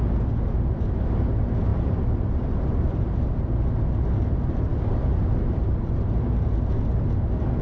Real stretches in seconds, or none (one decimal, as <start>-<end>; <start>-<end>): 0.0-1.7; 3.9-4.7; 5.6-7.6